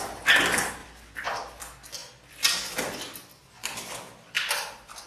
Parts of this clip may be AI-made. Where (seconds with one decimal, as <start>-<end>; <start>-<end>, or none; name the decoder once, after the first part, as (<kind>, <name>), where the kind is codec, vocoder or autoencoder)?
0.8-1.6 (vocoder, BigVGAN v2); 2.0-5.1